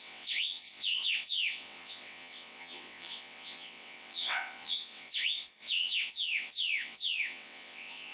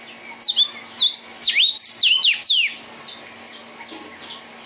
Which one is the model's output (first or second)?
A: first